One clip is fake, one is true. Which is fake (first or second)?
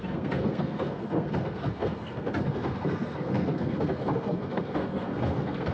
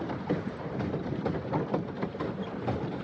first